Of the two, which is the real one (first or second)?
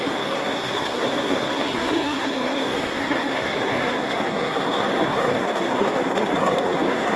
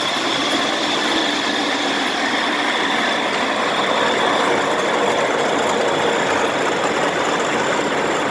second